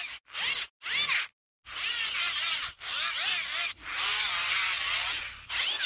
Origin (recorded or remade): recorded